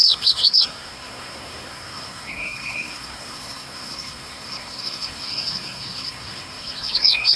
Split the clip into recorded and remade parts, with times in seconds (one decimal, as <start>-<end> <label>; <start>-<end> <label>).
0.0-7.4 remade